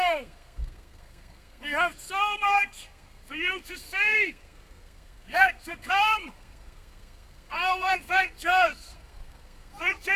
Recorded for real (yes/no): no